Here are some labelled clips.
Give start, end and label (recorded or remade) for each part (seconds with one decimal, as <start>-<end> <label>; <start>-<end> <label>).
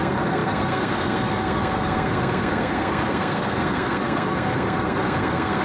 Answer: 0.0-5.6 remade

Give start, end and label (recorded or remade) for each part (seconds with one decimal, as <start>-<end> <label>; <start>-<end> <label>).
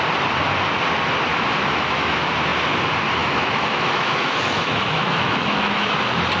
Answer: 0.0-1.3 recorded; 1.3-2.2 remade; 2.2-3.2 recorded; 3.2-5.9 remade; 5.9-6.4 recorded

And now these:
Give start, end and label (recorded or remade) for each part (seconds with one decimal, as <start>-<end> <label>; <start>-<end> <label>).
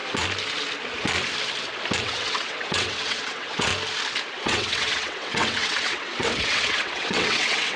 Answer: 0.0-2.0 recorded; 2.0-3.7 remade; 3.7-4.4 recorded; 4.4-7.8 remade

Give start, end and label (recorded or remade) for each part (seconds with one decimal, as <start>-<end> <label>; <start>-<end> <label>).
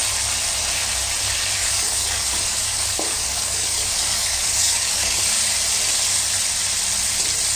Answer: 0.0-1.6 recorded; 1.6-5.2 remade; 5.2-7.6 recorded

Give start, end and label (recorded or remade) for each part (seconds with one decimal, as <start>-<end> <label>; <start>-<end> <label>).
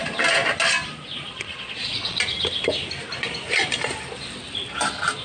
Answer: 0.0-1.3 recorded; 1.3-2.2 remade; 2.2-5.2 recorded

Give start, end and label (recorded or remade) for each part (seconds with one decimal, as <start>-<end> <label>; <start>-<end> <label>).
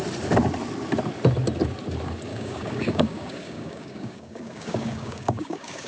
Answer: 0.0-2.3 recorded; 2.3-5.9 remade